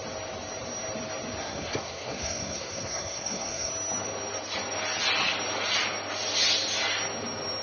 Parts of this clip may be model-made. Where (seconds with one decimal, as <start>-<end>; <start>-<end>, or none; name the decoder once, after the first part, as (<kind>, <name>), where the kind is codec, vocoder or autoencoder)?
1.4-3.7 (codec, SNAC)